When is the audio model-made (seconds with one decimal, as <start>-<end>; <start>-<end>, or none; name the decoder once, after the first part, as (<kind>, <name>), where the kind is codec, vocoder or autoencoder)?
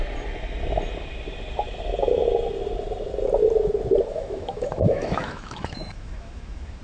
4.1-6.8 (autoencoder, DAC-VAE)